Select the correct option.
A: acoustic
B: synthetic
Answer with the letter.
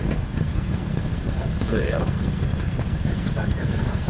B